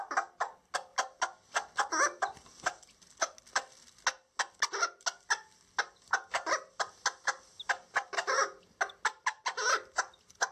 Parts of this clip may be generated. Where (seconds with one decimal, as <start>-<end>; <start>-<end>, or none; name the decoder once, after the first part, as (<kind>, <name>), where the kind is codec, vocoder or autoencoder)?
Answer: none